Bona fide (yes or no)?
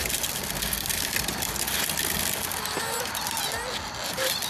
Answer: yes